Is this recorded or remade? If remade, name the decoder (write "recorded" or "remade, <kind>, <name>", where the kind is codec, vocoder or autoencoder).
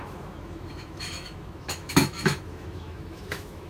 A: remade, autoencoder, DAC-VAE